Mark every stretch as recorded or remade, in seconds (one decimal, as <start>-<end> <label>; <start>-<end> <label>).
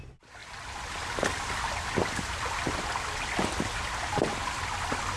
0.0-5.2 recorded